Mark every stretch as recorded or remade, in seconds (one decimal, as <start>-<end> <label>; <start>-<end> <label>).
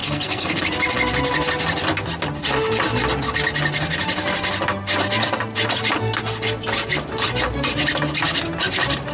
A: 0.0-0.6 remade; 0.6-9.1 recorded